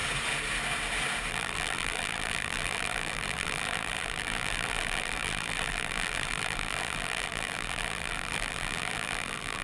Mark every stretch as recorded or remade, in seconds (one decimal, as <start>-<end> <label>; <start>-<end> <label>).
0.0-1.3 recorded; 1.3-9.6 remade